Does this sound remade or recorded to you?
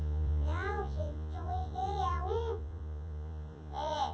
remade